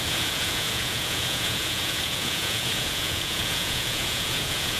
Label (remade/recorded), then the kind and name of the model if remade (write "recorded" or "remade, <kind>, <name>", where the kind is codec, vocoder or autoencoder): remade, vocoder, Vocos